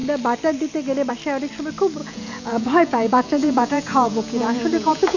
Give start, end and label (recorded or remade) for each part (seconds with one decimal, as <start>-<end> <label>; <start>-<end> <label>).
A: 0.0-2.0 recorded; 2.0-5.2 remade